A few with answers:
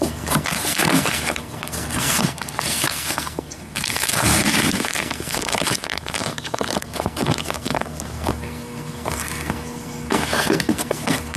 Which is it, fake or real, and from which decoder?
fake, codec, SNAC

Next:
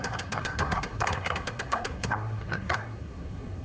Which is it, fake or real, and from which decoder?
fake, codec, SNAC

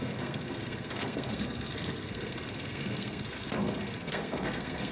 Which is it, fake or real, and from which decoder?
fake, codec, SNAC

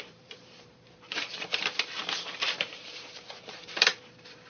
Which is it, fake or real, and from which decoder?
fake, vocoder, BigVGAN v2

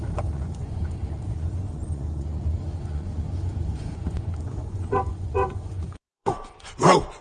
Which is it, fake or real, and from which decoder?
fake, vocoder, Vocos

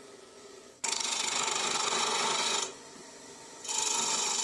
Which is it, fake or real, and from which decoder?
fake, vocoder, Vocos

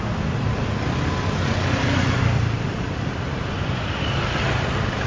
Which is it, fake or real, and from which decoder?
real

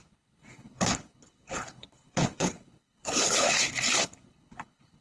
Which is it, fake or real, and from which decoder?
fake, codec, HILCodec